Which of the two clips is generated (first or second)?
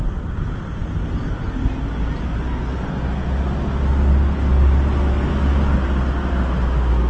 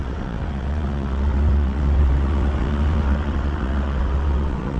second